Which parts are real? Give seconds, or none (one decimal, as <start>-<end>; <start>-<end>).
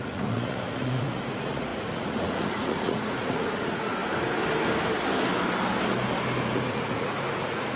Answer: 4.0-6.7